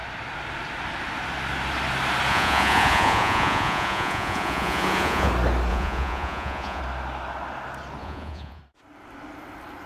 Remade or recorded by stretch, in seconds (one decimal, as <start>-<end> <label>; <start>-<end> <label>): 0.0-2.3 recorded; 2.3-5.3 remade; 5.3-5.7 recorded; 5.7-6.8 remade; 6.8-8.0 recorded; 8.0-8.6 remade; 8.6-9.9 recorded